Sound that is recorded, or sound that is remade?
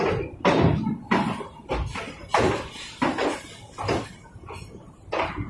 recorded